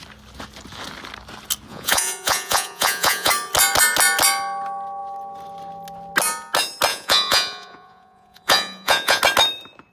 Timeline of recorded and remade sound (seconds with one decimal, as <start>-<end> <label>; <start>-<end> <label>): 0.0-1.7 recorded; 1.7-3.3 remade; 3.3-6.9 recorded; 6.9-9.2 remade; 9.2-9.9 recorded